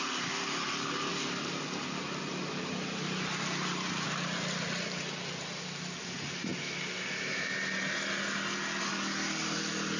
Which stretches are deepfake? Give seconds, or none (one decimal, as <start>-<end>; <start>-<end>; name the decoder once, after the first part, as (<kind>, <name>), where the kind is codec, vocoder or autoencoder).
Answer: none